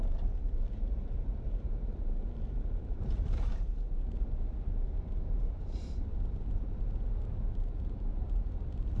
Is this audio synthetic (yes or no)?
yes